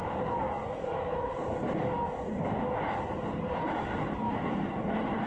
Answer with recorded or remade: recorded